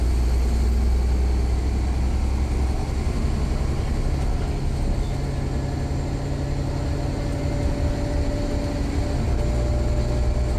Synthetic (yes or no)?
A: no